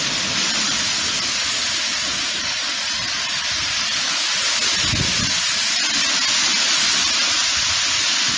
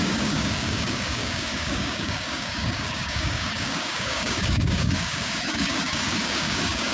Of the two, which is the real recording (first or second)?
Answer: first